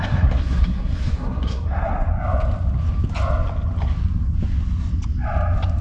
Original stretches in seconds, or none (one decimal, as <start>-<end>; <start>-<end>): 2.1-5.8